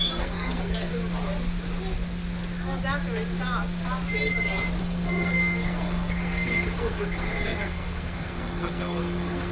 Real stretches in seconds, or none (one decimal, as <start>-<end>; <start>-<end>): 0.9-4.8